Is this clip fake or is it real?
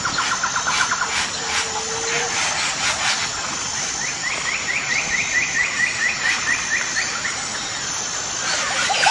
real